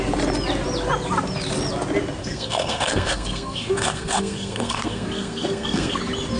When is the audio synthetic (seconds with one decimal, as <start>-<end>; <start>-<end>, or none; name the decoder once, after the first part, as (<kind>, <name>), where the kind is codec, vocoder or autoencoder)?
2.2-6.0 (codec, SNAC)